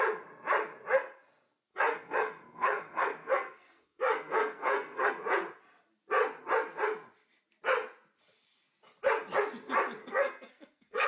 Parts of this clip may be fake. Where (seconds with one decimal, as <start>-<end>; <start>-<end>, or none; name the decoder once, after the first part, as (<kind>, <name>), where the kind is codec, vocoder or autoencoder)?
1.7-5.1 (codec, SNAC); 10.0-11.1